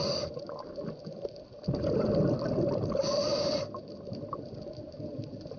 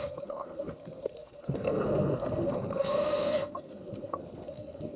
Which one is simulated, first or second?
second